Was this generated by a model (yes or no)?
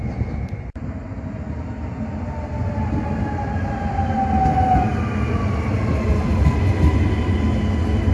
no